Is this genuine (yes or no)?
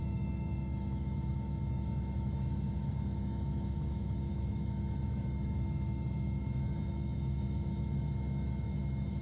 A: no